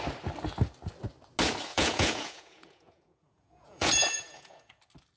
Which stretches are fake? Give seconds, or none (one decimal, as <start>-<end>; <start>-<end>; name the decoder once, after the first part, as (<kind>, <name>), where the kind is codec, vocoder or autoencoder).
1.7-4.8 (vocoder, Vocos)